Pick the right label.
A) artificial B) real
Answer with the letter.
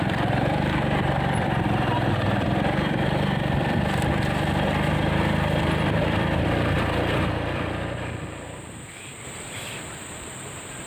A